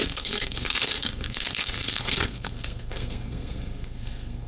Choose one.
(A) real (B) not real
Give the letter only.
B